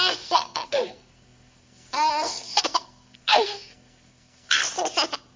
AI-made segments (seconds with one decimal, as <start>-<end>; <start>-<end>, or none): 0.0-4.6